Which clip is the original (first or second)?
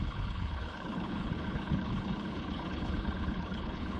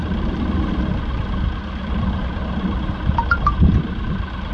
second